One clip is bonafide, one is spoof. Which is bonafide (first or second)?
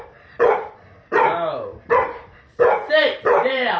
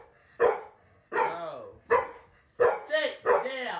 second